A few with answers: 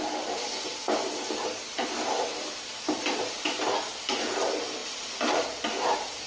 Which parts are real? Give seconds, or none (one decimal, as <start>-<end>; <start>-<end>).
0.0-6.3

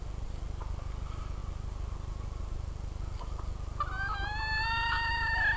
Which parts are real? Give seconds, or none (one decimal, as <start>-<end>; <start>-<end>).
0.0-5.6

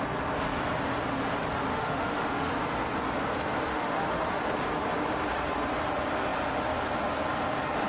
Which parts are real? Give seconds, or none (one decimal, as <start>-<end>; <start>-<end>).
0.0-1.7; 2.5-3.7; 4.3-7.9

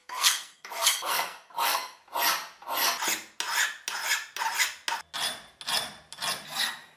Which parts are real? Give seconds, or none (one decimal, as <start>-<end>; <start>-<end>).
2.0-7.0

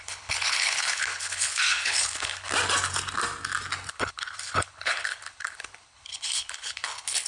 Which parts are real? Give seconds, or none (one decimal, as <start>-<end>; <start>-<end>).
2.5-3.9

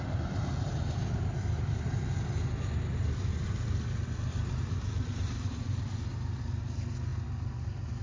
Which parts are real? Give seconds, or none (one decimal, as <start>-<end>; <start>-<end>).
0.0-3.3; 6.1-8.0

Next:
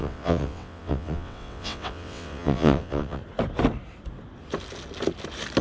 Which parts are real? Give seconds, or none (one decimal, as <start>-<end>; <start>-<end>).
3.2-5.6

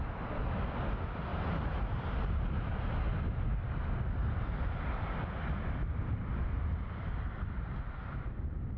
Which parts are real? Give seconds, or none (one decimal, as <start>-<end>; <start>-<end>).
0.0-1.3; 2.9-4.2; 6.4-8.8